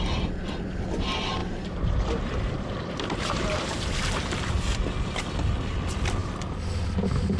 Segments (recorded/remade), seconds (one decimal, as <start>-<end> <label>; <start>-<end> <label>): 0.0-1.4 recorded; 1.4-4.5 remade; 4.5-7.4 recorded